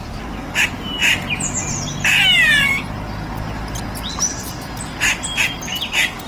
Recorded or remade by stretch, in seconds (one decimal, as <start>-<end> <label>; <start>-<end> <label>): 0.0-6.3 recorded